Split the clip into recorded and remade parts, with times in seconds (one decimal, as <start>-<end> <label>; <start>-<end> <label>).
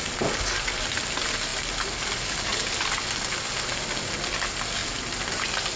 0.0-5.8 recorded